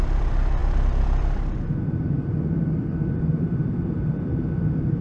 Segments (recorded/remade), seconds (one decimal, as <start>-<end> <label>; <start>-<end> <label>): 0.0-5.0 remade